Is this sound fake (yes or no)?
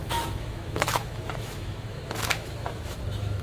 yes